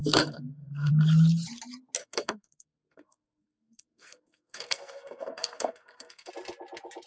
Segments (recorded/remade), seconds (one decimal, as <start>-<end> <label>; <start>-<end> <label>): 0.0-0.9 remade; 0.9-2.0 recorded; 2.0-6.3 remade; 6.3-7.1 recorded